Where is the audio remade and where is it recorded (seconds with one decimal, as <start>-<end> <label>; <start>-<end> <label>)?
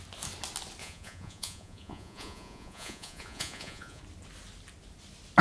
0.0-0.8 recorded; 0.8-4.0 remade; 4.0-5.4 recorded